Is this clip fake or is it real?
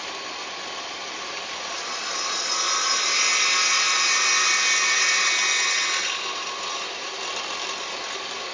real